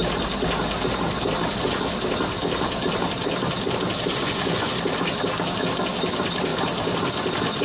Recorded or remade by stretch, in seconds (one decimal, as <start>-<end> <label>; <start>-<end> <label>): 0.0-4.1 recorded; 4.1-4.7 remade; 4.7-7.6 recorded

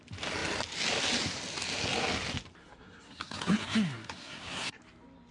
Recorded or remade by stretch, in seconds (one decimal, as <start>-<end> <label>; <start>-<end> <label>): 0.0-2.6 recorded; 2.6-4.8 remade; 4.8-5.3 recorded

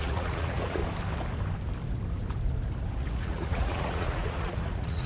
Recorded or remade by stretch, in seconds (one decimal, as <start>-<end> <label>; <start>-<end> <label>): 0.0-0.8 remade; 0.8-3.0 recorded; 3.0-5.1 remade

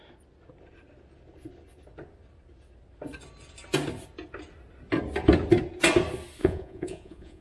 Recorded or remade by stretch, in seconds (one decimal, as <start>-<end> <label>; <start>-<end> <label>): 0.0-6.4 recorded; 6.4-7.4 remade

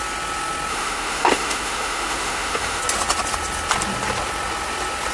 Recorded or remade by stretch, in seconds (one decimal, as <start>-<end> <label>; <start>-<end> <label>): 0.0-0.7 recorded; 0.7-2.8 remade; 2.8-5.1 recorded